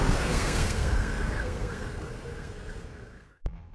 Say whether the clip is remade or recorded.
remade